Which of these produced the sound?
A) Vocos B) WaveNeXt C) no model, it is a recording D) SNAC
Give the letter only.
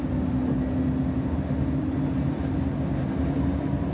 C